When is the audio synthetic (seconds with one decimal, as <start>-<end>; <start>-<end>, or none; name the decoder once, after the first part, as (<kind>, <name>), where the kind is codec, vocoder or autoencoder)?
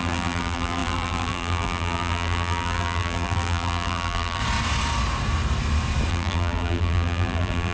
0.0-4.4 (vocoder, BigVGAN v2); 6.1-7.7